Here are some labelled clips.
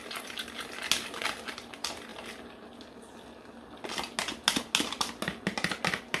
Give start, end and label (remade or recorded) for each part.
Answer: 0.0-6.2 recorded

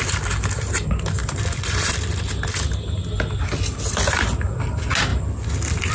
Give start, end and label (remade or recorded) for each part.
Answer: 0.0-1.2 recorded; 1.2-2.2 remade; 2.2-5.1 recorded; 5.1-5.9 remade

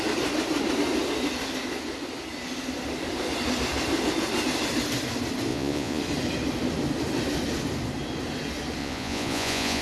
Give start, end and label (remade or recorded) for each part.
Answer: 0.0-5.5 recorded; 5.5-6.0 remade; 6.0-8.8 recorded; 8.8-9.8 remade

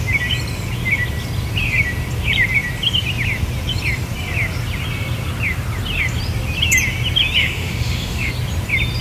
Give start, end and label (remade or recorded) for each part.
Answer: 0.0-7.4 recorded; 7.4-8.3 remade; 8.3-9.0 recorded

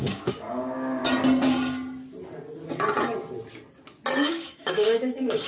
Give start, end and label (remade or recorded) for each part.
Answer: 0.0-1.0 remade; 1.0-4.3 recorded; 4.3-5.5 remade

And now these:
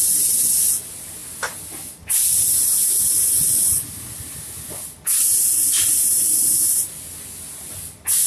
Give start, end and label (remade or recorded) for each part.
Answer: 0.0-8.3 recorded

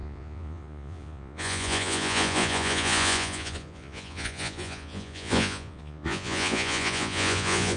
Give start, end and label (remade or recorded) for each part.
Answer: 0.0-7.8 remade

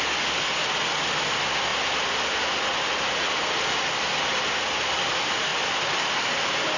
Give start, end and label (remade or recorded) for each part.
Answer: 0.0-6.8 recorded